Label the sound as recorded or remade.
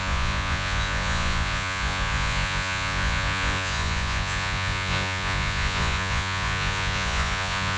remade